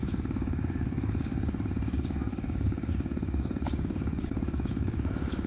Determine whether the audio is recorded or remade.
remade